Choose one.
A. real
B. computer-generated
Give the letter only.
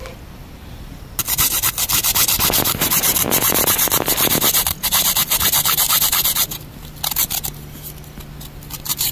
A